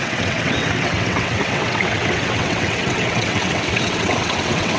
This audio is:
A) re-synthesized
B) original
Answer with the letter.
A